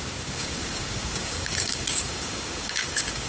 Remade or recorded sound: remade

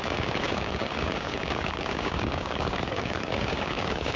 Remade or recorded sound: remade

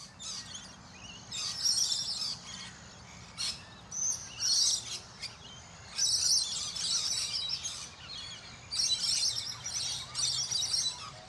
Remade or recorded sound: recorded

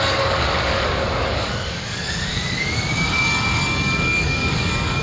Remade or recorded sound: remade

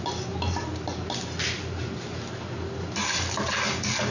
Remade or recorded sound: recorded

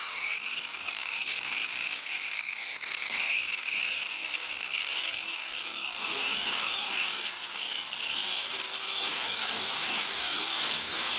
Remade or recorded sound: remade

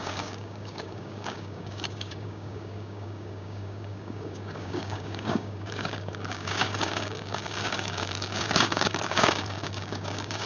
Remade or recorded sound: remade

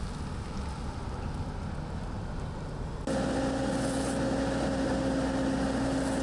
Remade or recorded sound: recorded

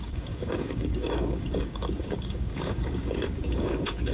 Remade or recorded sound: remade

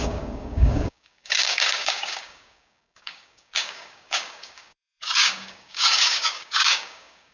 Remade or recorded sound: remade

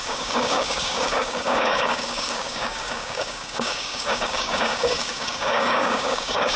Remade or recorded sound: remade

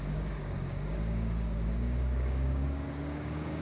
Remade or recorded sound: remade